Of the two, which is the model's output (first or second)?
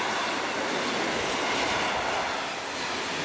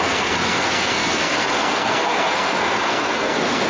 second